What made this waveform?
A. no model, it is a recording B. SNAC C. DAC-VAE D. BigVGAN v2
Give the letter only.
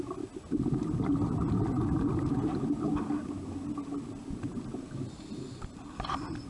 A